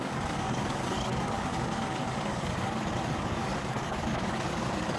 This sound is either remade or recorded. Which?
remade